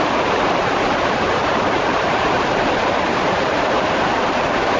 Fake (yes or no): no